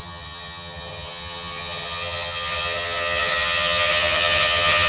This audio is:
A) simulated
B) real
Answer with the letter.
A